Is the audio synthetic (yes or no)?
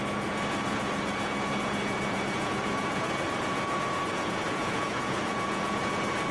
yes